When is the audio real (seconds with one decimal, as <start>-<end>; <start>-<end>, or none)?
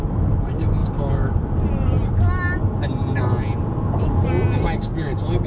0.0-5.5